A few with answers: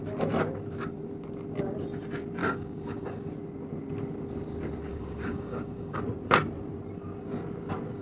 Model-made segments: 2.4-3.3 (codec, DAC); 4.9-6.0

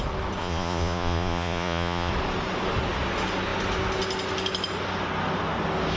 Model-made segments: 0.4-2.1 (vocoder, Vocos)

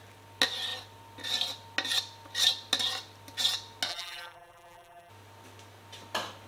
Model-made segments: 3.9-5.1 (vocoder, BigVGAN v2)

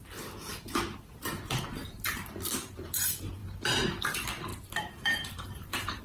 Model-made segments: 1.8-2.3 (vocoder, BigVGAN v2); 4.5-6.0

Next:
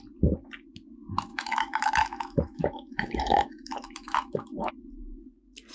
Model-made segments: 1.3-4.7 (autoencoder, DAC-VAE)

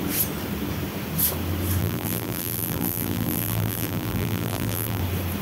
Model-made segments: 1.8-5.0 (vocoder, BigVGAN v2)

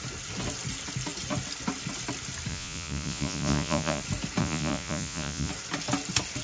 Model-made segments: 2.5-4.0 (vocoder, Vocos); 4.4-5.5